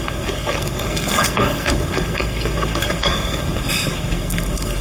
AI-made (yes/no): yes